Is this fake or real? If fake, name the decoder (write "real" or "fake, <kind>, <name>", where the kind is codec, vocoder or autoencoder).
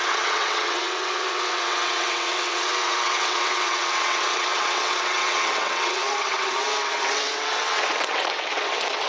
fake, vocoder, WaveNeXt